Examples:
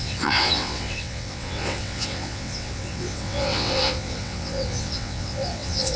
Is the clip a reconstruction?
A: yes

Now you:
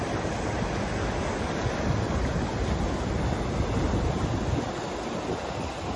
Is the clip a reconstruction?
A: no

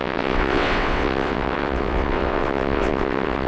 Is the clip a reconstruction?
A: yes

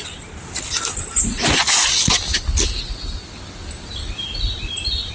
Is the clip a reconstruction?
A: no